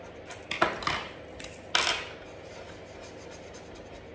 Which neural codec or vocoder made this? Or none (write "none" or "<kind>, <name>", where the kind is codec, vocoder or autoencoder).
none